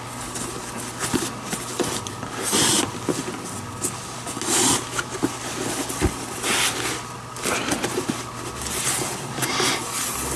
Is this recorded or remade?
recorded